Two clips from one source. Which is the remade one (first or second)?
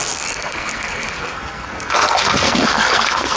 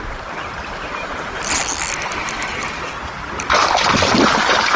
first